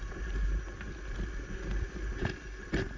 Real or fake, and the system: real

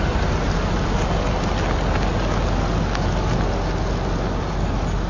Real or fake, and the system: real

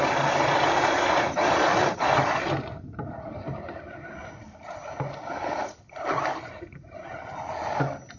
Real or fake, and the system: real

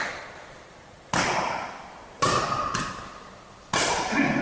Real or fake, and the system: real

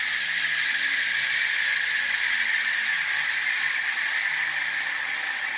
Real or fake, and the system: real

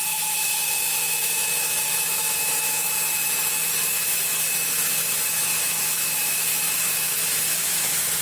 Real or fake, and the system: fake, autoencoder, DAC-VAE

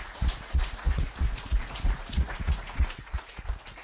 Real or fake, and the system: fake, vocoder, Vocos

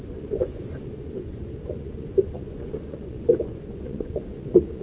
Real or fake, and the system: fake, vocoder, Vocos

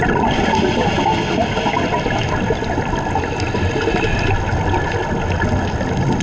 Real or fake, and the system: real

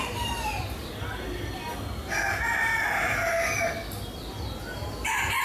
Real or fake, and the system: real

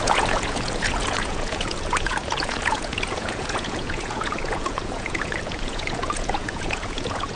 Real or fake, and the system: fake, vocoder, Vocos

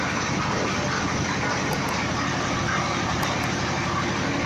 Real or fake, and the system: real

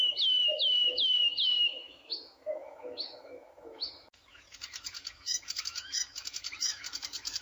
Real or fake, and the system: fake, autoencoder, DAC-VAE